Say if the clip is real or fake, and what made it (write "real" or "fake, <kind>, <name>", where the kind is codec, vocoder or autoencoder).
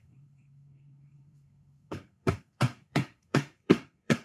fake, codec, SNAC